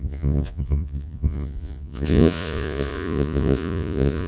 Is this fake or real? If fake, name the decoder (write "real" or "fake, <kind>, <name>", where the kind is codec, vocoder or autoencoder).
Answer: fake, vocoder, Vocos